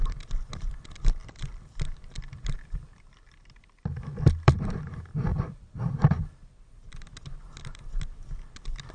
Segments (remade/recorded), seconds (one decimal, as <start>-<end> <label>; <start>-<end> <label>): 0.0-1.2 recorded; 1.2-4.8 remade; 4.8-5.3 recorded; 5.3-5.8 remade; 5.8-8.9 recorded